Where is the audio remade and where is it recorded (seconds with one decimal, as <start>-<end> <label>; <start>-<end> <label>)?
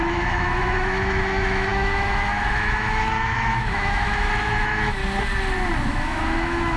0.0-5.0 remade; 5.0-5.9 recorded; 5.9-6.8 remade